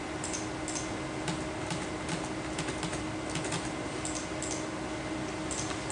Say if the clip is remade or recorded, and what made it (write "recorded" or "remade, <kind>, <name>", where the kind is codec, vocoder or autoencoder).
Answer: recorded